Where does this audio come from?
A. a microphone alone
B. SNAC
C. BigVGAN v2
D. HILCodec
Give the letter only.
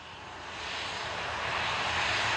A